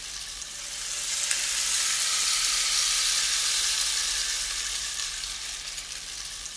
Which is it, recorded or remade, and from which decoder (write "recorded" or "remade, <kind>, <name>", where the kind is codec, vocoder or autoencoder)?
recorded